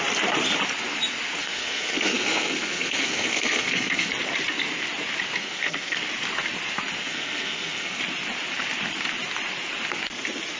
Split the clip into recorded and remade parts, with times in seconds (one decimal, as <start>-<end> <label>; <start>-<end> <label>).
0.0-1.4 recorded; 1.4-4.1 remade; 4.1-5.4 recorded; 5.4-6.0 remade; 6.0-7.0 recorded; 7.0-8.0 remade; 8.0-10.6 recorded